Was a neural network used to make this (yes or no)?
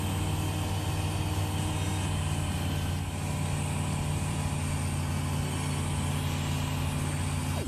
no